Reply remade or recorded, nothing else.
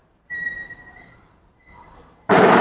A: remade